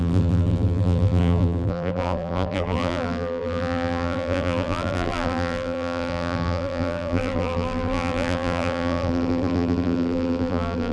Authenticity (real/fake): fake